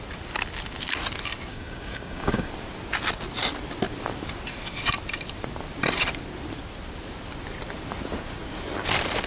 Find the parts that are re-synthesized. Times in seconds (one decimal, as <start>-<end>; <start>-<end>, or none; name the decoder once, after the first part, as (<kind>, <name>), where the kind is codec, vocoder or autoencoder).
1.5-2.5 (codec, DAC)